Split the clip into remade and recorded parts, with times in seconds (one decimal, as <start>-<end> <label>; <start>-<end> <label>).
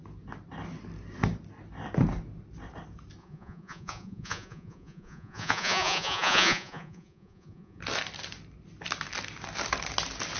0.0-3.2 recorded; 3.2-7.8 remade; 7.8-10.4 recorded